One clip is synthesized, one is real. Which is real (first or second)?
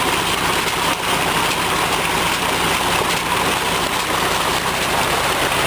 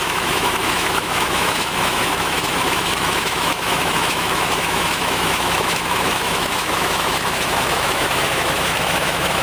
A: first